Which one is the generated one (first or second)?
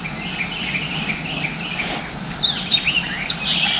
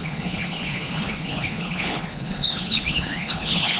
second